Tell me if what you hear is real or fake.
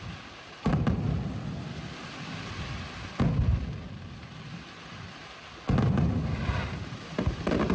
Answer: real